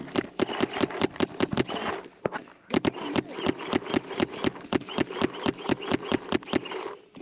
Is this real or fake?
real